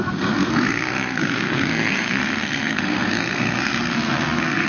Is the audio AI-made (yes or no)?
yes